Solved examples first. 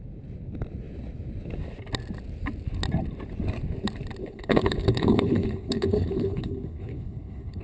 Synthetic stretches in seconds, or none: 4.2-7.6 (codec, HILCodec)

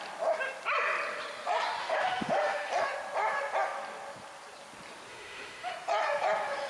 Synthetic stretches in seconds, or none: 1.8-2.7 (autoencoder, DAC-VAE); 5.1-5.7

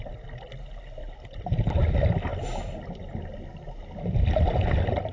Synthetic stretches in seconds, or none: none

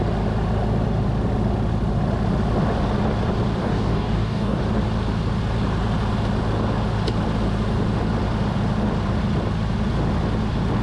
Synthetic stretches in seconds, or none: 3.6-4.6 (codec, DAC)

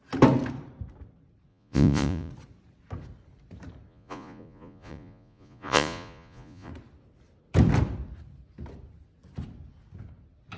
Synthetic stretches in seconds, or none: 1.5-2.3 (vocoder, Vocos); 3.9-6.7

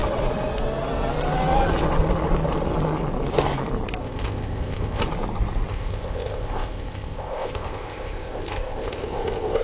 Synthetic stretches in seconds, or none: 4.0-5.0 (codec, ZipCodec); 5.7-9.6